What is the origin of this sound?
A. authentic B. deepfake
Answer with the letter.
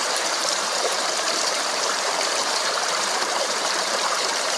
B